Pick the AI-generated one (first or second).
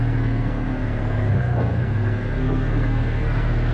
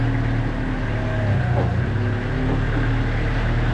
first